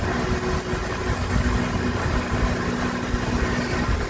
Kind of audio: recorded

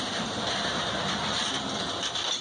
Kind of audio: recorded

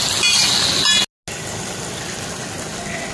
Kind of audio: recorded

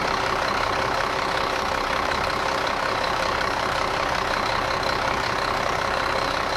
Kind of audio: remade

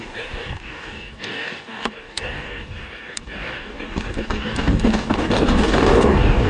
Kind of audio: remade